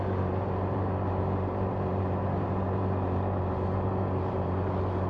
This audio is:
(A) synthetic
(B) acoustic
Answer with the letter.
A